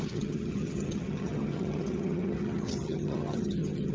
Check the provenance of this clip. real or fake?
fake